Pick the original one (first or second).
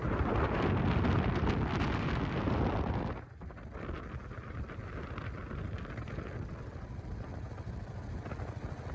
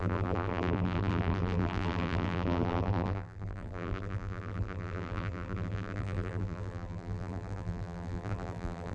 first